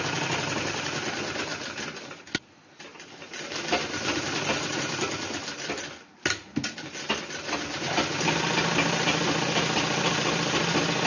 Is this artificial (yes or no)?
no